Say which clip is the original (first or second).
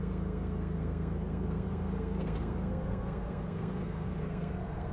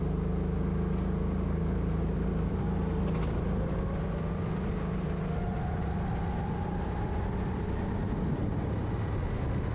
second